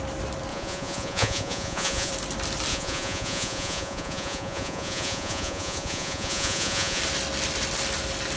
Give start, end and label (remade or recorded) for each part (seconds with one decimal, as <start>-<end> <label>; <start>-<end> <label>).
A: 0.0-0.5 recorded; 0.5-2.1 remade; 2.1-2.7 recorded; 2.7-7.0 remade; 7.0-8.4 recorded

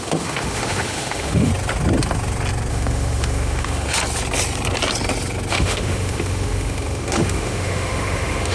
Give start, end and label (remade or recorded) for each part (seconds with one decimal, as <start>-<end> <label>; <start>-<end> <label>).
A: 0.0-1.5 remade; 1.5-2.7 recorded; 2.7-4.0 remade; 4.0-5.5 recorded; 5.5-8.5 remade

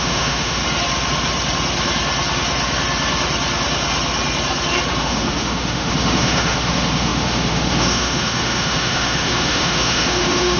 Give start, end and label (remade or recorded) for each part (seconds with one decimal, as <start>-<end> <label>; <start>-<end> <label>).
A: 0.0-0.6 remade; 0.6-5.0 recorded; 5.0-10.6 remade

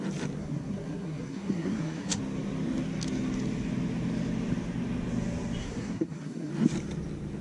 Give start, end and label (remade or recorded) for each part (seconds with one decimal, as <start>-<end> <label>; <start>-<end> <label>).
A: 0.0-0.4 recorded; 0.4-2.2 remade; 2.2-5.6 recorded; 5.6-6.5 remade; 6.5-7.4 recorded

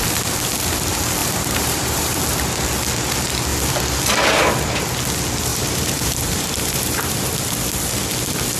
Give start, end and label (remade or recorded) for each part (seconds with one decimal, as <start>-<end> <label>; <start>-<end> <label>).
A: 0.0-1.2 recorded; 1.2-2.2 remade; 2.2-5.5 recorded; 5.5-7.1 remade; 7.1-8.6 recorded

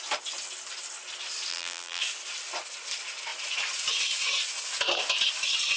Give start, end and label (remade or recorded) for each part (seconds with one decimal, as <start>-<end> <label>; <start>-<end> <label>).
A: 0.0-1.5 recorded; 1.5-2.0 remade; 2.0-5.8 recorded